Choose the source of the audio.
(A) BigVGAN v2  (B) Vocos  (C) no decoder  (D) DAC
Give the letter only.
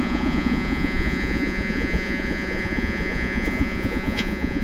B